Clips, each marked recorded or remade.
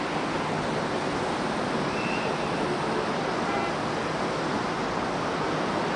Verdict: recorded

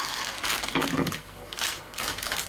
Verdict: remade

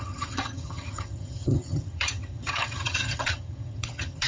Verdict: remade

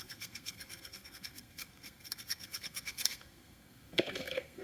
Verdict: remade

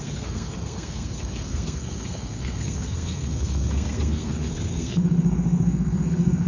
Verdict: remade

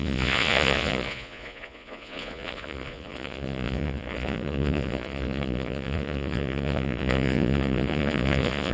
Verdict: remade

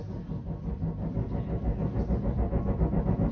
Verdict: recorded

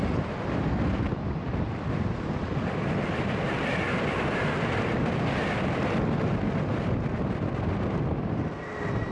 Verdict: recorded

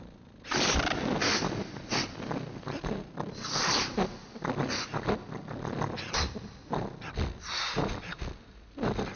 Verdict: recorded